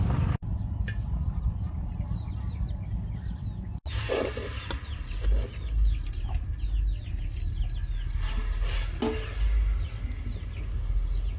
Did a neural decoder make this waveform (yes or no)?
no